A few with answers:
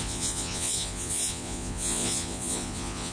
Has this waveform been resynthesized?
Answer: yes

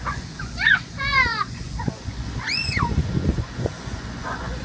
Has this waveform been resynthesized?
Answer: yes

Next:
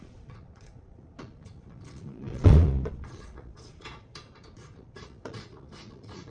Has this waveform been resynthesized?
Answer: yes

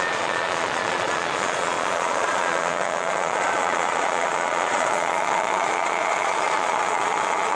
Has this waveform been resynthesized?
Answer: yes